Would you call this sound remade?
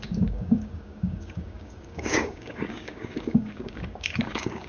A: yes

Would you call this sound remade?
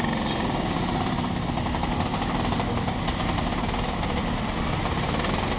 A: no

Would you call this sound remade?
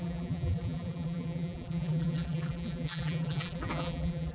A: yes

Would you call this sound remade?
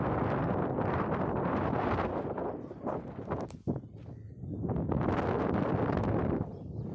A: no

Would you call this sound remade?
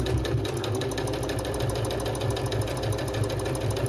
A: no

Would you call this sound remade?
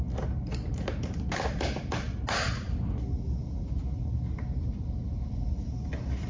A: no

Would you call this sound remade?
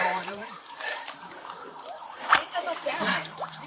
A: yes